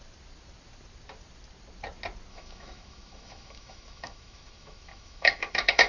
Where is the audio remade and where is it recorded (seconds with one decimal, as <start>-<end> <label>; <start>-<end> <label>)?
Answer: 0.0-2.3 recorded; 2.3-5.9 remade